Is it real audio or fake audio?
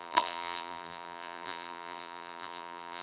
fake